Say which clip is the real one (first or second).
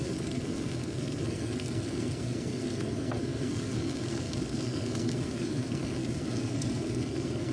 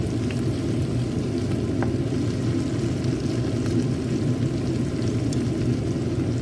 second